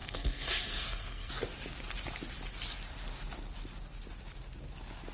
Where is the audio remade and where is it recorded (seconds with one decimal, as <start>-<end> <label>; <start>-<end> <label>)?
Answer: 0.0-1.3 remade; 1.3-5.1 recorded